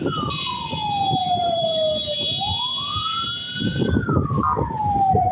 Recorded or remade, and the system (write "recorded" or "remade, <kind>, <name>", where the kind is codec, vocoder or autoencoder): recorded